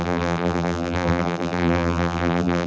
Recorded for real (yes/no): no